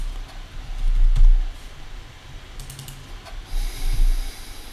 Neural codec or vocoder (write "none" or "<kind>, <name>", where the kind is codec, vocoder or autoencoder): none